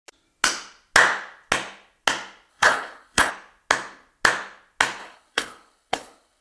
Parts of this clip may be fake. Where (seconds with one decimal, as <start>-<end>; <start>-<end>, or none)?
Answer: 2.5-3.3; 5.0-6.4